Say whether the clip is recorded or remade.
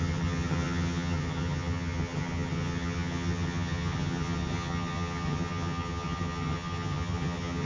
remade